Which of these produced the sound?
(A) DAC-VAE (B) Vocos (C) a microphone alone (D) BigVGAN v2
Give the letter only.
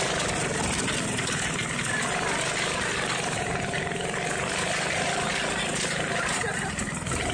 C